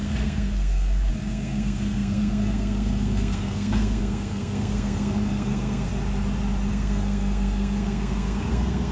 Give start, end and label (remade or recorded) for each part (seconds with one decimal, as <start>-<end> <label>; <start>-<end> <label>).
0.0-5.9 remade; 5.9-6.7 recorded; 6.7-8.9 remade